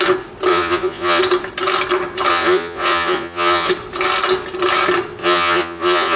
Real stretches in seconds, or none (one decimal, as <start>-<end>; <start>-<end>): 0.0-0.5; 1.2-2.3; 3.7-5.2